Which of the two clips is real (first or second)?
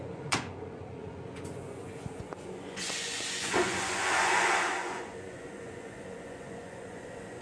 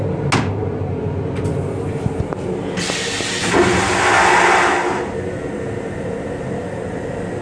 second